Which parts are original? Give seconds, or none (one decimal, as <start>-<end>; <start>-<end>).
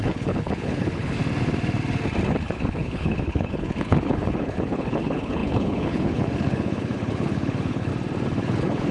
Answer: 1.2-2.3; 7.9-8.4